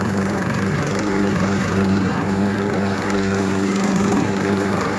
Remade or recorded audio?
remade